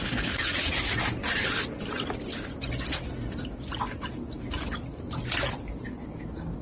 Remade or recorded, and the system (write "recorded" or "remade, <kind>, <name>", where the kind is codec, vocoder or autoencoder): recorded